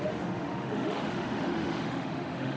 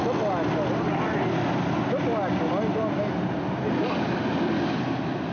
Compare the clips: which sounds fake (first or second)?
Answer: first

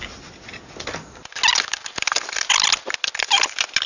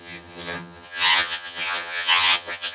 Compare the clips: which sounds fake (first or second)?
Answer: second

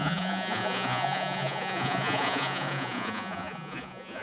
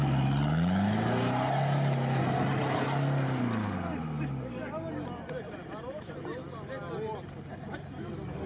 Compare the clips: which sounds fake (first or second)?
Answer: first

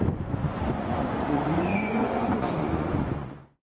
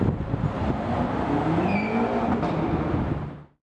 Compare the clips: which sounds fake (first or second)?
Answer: first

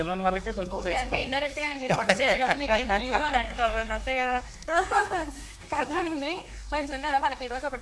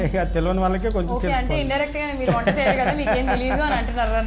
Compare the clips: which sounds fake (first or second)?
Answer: first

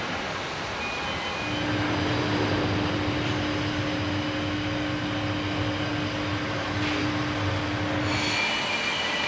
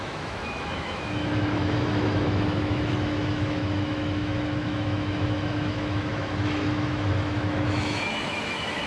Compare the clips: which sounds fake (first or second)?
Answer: second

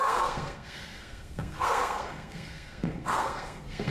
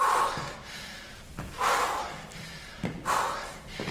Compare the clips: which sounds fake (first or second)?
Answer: first